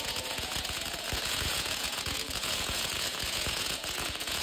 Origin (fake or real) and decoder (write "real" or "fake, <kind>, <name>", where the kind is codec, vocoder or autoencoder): fake, vocoder, Vocos